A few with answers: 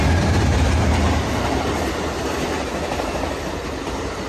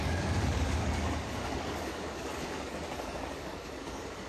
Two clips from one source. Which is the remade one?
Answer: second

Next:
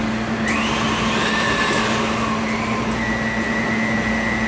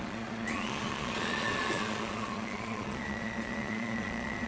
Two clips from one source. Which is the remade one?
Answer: second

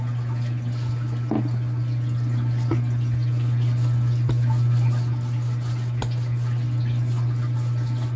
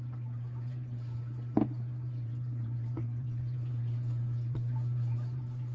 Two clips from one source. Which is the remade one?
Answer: second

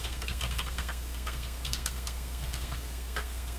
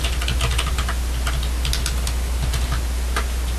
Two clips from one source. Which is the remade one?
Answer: first